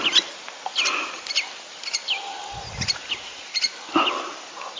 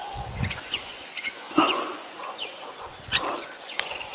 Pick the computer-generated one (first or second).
second